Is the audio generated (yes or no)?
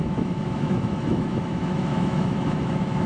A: yes